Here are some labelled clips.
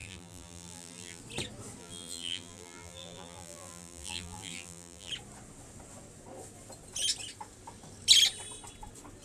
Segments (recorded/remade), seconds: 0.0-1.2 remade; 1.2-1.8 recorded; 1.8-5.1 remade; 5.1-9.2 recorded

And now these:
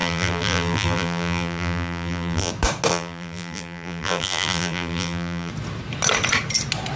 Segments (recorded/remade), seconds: 0.0-2.5 remade; 2.5-2.9 recorded; 2.9-5.5 remade; 5.5-7.0 recorded

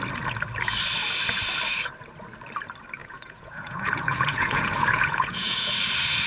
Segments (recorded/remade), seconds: 0.0-3.0 recorded; 3.0-5.7 remade; 5.7-6.3 recorded

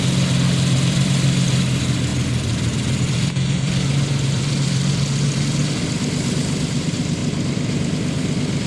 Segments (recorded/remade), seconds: 0.0-8.7 remade

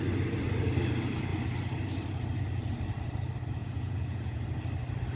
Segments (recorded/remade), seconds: 0.0-3.6 recorded; 3.6-4.4 remade; 4.4-5.2 recorded

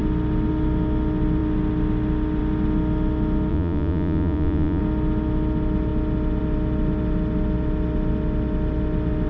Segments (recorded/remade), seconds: 0.0-3.5 recorded; 3.5-4.8 remade; 4.8-9.3 recorded

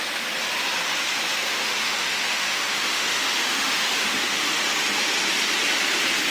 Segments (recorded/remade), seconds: 0.0-1.4 recorded; 1.4-4.6 remade; 4.6-6.3 recorded

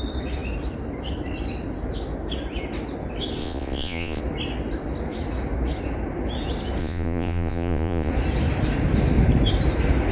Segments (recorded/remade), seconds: 0.0-3.4 recorded; 3.4-4.2 remade; 4.2-6.8 recorded; 6.8-8.1 remade; 8.1-10.1 recorded